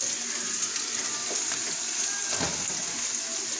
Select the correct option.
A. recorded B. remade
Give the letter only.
A